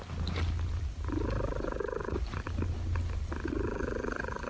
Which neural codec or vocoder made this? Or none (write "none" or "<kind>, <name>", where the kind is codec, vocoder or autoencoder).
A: none